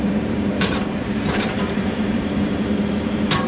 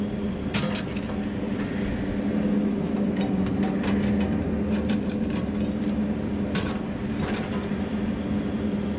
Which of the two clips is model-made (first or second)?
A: first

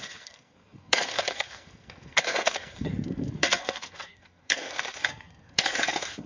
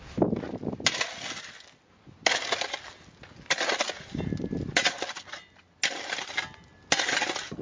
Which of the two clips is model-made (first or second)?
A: first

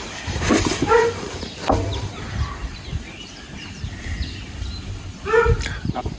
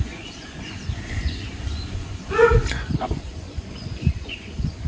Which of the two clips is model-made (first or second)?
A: second